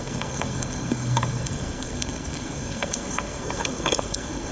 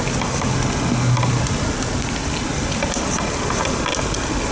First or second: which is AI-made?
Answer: first